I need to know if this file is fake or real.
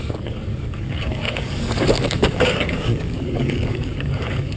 fake